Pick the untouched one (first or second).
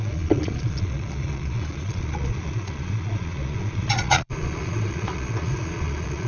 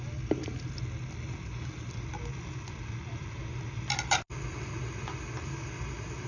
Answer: second